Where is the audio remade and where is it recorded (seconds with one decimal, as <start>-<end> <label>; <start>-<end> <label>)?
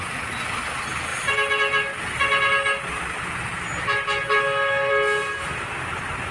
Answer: 0.0-6.3 recorded